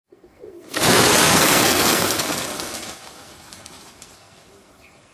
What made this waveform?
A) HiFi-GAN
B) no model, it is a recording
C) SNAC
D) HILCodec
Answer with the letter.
C